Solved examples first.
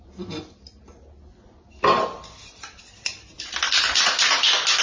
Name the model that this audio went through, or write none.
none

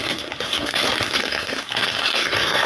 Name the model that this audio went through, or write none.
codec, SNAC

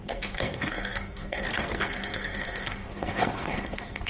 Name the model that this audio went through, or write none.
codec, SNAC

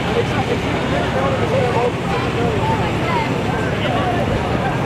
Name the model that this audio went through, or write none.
none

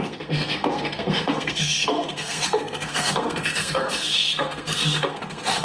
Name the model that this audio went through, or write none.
codec, SNAC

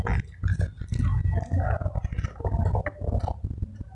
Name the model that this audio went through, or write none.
none